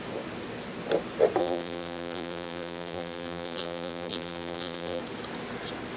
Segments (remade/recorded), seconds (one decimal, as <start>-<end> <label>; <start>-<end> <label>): 0.0-1.4 recorded; 1.4-5.0 remade; 5.0-6.0 recorded